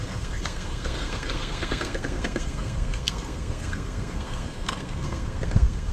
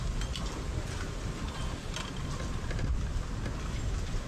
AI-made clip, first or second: first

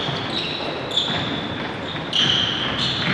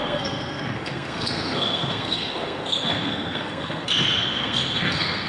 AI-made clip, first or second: second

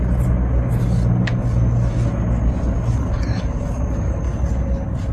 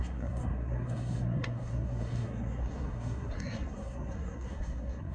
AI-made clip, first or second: second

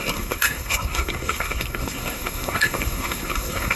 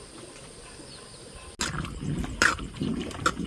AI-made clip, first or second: first